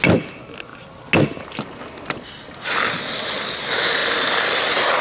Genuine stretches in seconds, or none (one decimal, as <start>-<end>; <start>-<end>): 0.0-5.0